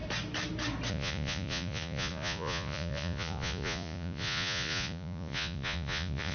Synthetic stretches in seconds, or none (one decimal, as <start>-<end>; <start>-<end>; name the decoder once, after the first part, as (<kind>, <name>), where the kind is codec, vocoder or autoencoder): 0.9-6.3 (vocoder, Vocos)